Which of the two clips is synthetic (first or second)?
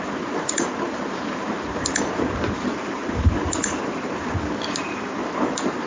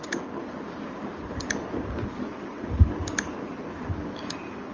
first